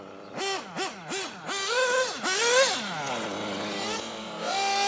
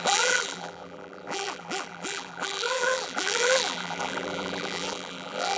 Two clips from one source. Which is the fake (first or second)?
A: second